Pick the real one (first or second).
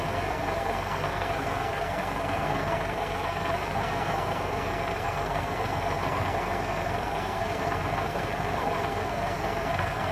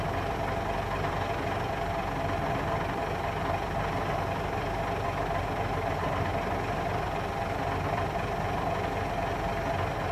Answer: second